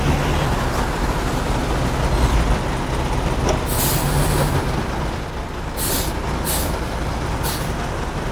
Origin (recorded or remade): recorded